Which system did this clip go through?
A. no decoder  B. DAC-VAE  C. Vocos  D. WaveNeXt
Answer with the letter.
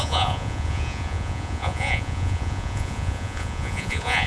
C